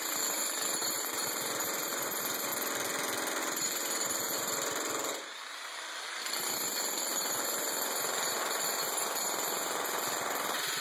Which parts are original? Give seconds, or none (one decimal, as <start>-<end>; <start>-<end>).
2.5-3.4

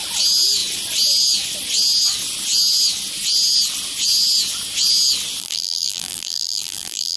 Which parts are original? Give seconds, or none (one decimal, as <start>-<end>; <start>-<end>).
0.0-5.4

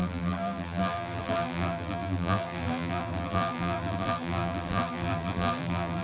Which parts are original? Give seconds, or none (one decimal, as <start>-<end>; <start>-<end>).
none

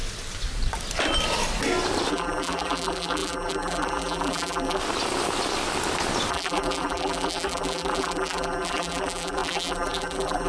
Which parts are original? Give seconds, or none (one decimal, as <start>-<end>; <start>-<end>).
0.0-2.1; 4.8-6.3

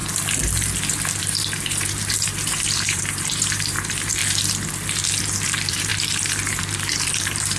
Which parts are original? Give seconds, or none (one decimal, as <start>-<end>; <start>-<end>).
0.0-1.2; 4.2-5.2